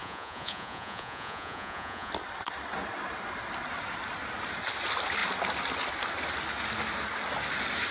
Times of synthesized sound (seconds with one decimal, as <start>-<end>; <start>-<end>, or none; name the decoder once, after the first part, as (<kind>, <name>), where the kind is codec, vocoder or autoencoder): 0.0-2.1 (vocoder, Vocos)